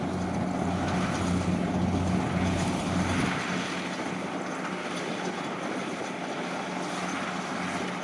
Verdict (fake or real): real